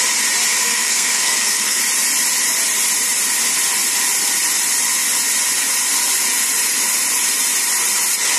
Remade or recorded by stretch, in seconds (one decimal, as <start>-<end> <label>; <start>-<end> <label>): 0.0-0.6 recorded; 0.6-1.8 remade; 1.8-8.4 recorded